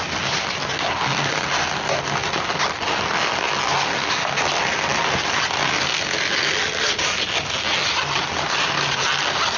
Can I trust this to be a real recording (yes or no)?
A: yes